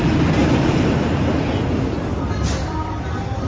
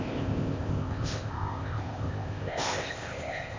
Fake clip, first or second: second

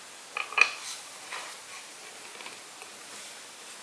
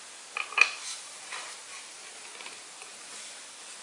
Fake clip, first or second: second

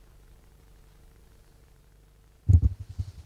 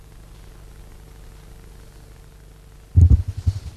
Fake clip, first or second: first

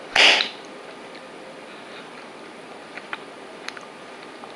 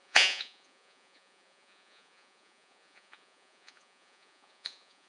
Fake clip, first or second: second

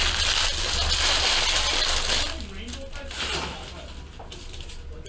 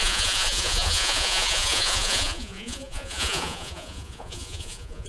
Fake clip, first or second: second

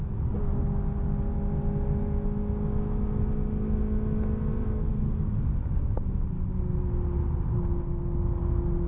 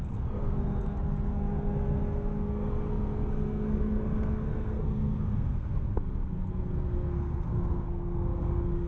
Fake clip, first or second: second